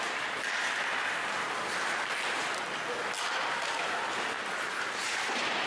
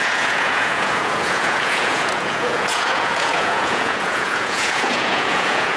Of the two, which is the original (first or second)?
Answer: first